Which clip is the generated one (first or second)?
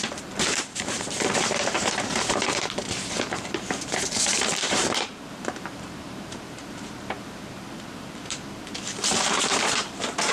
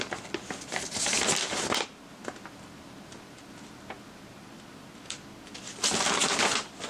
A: first